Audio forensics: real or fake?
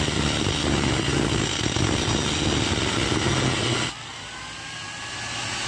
real